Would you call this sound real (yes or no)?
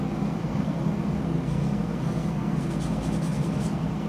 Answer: no